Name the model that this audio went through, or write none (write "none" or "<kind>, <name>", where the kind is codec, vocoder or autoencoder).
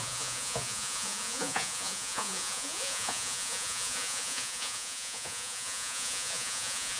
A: vocoder, Vocos